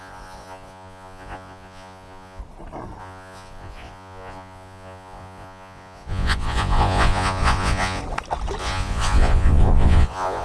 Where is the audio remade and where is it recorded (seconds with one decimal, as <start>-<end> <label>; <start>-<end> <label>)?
0.0-2.4 remade; 2.4-3.0 recorded; 3.0-8.0 remade; 8.0-8.6 recorded; 8.6-10.4 remade

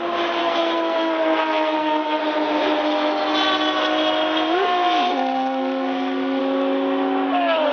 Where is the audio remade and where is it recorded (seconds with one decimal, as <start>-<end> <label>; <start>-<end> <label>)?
0.0-0.4 recorded; 0.4-2.2 remade; 2.2-5.1 recorded; 5.1-6.4 remade; 6.4-7.7 recorded

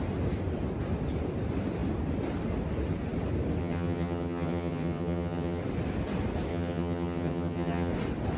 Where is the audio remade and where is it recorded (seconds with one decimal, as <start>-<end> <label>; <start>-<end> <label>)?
0.0-3.6 recorded; 3.6-5.6 remade; 5.6-6.5 recorded; 6.5-7.9 remade; 7.9-8.4 recorded